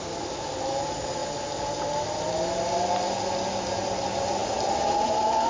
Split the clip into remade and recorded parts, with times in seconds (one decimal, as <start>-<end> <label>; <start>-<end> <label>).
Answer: 0.0-5.5 recorded